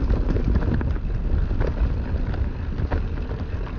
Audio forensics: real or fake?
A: real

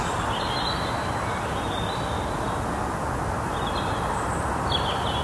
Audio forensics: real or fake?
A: real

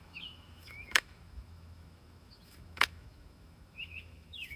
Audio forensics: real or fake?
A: fake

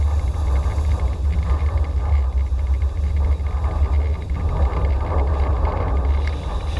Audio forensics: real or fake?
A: real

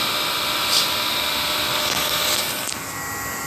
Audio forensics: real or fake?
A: real